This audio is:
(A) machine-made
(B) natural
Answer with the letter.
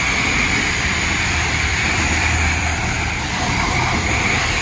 A